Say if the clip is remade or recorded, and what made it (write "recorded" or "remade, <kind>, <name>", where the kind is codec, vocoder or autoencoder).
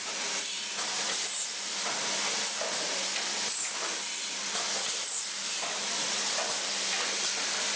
remade, vocoder, BigVGAN v2